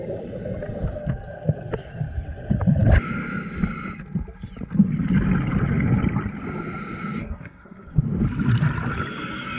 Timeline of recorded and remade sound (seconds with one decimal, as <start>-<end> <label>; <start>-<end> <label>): 0.0-7.2 recorded; 7.2-8.0 remade; 8.0-9.6 recorded

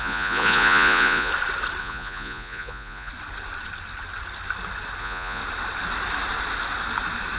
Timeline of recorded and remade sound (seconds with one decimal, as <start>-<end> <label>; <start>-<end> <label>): 0.0-1.3 remade; 1.3-1.8 recorded; 1.8-3.1 remade; 3.1-5.0 recorded; 5.0-5.4 remade; 5.4-7.4 recorded

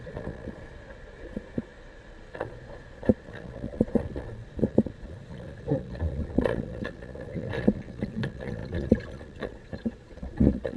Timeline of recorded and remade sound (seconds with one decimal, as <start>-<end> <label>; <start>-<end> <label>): 0.0-10.8 remade

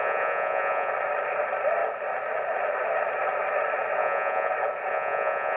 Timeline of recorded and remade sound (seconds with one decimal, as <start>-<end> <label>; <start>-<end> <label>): 0.0-0.9 remade; 0.9-4.0 recorded; 4.0-4.5 remade; 4.5-4.9 recorded; 4.9-5.6 remade